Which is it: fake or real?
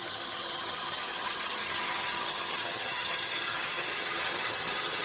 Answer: fake